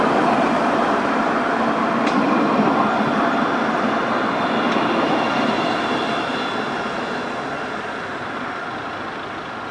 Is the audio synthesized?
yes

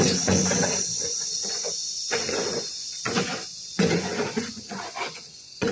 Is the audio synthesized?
yes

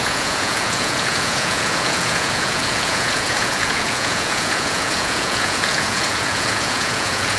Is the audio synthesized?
yes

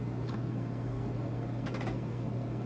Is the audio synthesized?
yes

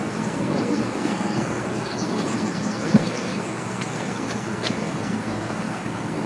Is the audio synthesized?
yes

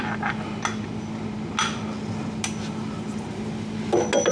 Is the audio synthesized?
no